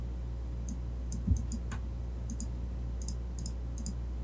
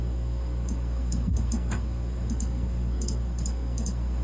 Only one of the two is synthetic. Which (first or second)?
second